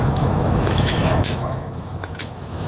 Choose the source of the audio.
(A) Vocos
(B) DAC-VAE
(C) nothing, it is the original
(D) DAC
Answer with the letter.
B